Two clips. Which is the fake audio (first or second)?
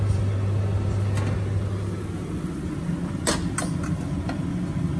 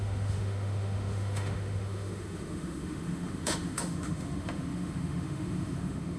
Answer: second